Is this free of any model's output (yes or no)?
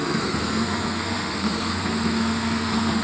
no